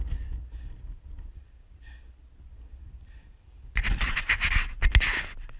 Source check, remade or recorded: recorded